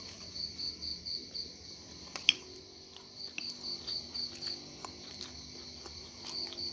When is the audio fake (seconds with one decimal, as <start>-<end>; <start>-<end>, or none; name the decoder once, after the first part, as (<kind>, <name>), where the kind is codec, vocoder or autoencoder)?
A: none